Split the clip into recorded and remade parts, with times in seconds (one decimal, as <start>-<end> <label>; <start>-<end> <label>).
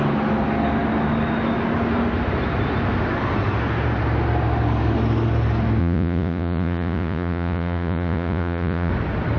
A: 0.0-5.8 recorded; 5.8-8.9 remade; 8.9-9.4 recorded